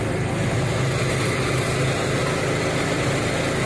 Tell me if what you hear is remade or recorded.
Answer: recorded